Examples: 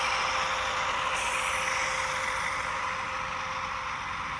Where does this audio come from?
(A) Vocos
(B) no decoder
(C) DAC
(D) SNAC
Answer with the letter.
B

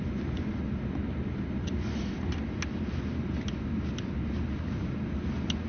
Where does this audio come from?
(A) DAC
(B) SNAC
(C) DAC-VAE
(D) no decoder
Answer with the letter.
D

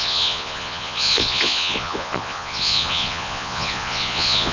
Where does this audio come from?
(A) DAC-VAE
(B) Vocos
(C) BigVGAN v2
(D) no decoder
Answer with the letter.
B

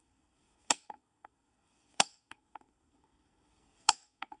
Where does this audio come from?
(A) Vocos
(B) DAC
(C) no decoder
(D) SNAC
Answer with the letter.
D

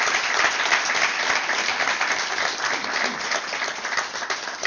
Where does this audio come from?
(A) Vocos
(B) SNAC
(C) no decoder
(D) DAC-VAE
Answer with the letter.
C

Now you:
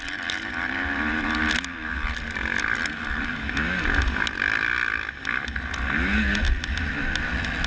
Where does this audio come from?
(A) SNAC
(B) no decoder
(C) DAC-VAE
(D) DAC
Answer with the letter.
B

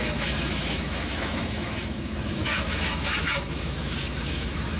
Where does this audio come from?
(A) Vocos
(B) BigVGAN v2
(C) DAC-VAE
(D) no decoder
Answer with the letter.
C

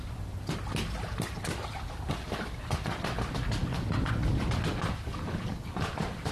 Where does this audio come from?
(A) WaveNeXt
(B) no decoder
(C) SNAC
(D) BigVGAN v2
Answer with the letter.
B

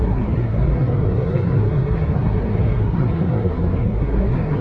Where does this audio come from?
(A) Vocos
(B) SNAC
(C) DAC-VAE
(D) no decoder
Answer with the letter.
B